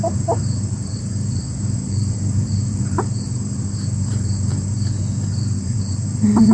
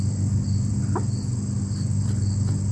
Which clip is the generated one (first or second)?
first